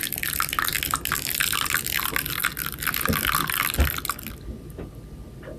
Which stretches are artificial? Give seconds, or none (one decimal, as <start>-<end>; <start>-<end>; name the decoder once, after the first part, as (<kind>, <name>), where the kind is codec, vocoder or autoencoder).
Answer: none